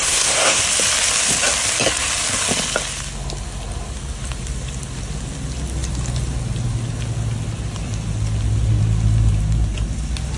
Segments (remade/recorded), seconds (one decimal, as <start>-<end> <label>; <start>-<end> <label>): 0.0-0.6 remade; 0.6-10.4 recorded